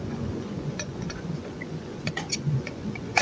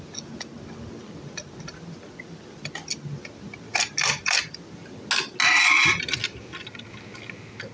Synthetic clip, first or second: first